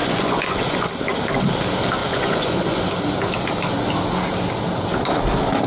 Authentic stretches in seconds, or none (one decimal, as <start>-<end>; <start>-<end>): 0.9-2.0; 2.8-5.7